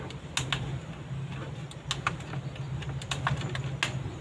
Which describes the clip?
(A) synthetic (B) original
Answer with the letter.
B